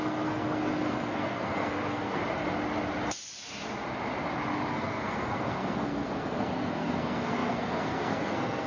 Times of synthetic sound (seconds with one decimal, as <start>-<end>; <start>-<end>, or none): 0.0-2.2; 4.7-8.7